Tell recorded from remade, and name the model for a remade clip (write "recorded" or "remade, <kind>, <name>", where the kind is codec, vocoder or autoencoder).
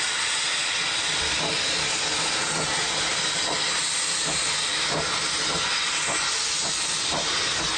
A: recorded